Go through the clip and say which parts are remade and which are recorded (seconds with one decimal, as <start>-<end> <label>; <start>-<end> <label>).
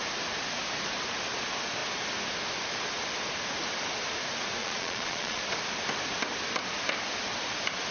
0.0-4.6 recorded; 4.6-5.4 remade; 5.4-7.9 recorded